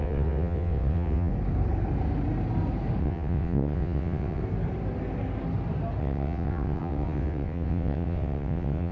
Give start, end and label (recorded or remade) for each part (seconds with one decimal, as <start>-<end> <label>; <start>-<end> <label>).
0.0-1.3 remade; 1.3-3.0 recorded; 3.0-4.4 remade; 4.4-6.0 recorded; 6.0-8.9 remade